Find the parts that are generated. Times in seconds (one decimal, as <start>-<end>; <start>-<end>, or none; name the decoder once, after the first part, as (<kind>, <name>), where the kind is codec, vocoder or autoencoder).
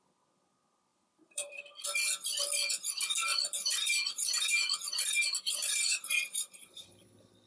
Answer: 0.9-1.6 (vocoder, BigVGAN v2); 3.3-6.9